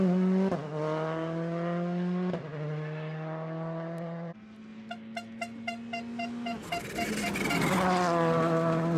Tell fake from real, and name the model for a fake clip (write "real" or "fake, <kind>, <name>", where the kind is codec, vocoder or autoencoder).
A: real